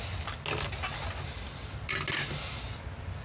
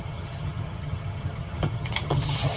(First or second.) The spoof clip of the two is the second